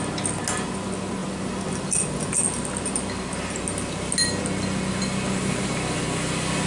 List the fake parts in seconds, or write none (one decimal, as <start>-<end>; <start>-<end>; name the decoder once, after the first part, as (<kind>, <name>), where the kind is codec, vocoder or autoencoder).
none